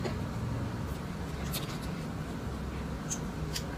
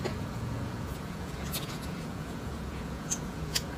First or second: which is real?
first